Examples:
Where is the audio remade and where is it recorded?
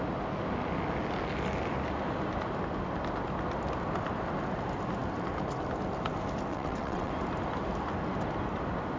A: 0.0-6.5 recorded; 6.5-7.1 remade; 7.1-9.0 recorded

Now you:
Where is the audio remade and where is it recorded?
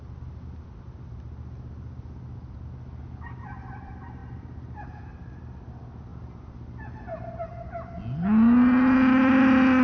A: 0.0-9.8 recorded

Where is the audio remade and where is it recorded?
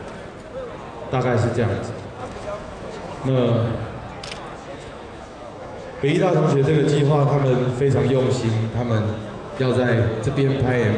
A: 0.0-2.2 recorded; 2.2-3.3 remade; 3.3-4.7 recorded; 4.7-9.6 remade; 9.6-11.0 recorded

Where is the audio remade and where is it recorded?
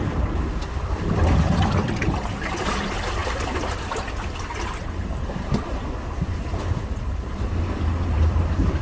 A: 0.0-8.8 recorded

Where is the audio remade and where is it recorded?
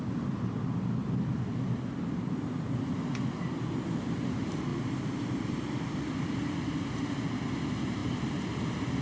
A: 0.0-8.0 recorded; 8.0-8.6 remade; 8.6-9.0 recorded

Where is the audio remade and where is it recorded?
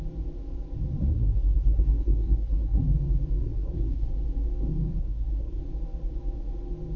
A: 0.0-1.0 recorded; 1.0-2.8 remade; 2.8-3.4 recorded; 3.4-4.1 remade; 4.1-5.0 recorded; 5.0-5.6 remade; 5.6-7.0 recorded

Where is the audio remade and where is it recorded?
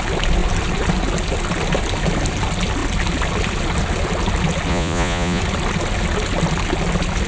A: 0.0-4.7 recorded; 4.7-5.4 remade; 5.4-7.3 recorded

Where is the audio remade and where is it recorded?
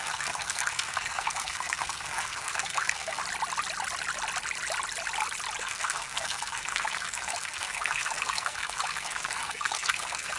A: 0.0-3.2 remade; 3.2-5.6 recorded; 5.6-10.4 remade